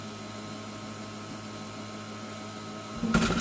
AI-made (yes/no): no